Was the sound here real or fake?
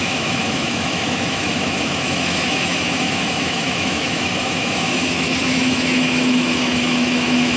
fake